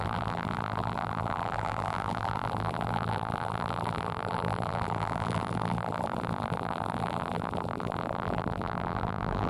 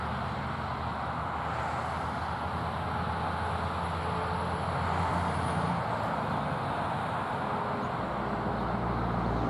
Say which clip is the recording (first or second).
second